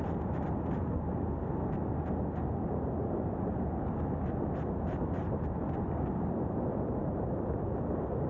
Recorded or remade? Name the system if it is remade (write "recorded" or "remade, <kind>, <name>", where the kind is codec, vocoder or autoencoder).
recorded